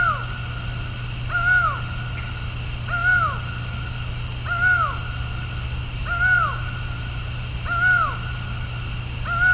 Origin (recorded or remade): recorded